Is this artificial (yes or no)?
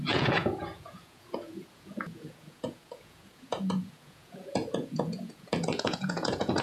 yes